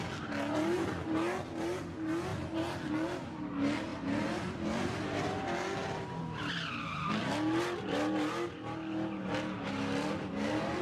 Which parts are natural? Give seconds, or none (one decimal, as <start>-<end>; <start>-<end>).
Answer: 0.0-10.8